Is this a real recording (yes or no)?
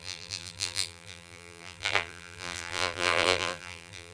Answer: no